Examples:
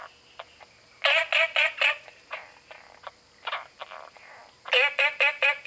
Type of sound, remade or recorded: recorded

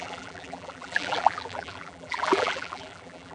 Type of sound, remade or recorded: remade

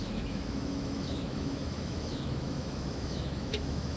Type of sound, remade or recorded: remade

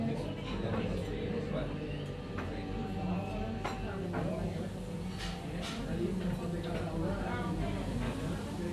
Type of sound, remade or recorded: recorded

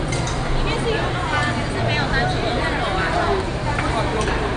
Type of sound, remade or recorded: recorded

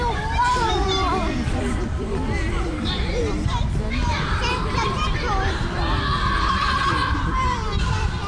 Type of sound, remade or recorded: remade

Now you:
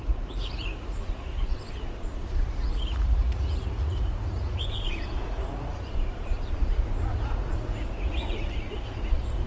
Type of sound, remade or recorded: remade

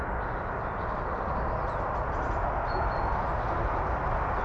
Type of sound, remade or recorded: recorded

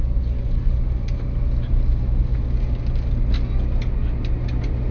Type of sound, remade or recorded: recorded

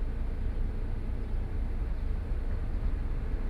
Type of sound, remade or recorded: recorded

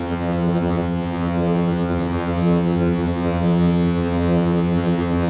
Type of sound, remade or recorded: remade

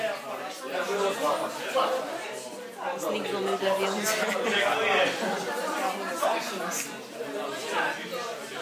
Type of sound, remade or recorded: recorded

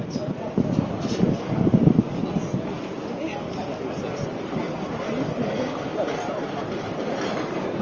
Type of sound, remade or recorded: recorded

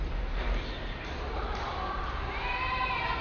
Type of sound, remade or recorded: remade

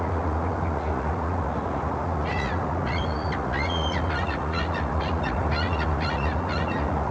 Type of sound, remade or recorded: remade